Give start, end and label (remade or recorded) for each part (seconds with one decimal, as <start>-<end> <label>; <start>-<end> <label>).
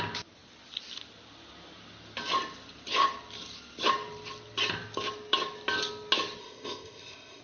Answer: 0.0-6.4 recorded; 6.4-7.4 remade